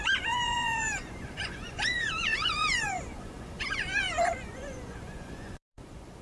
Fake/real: fake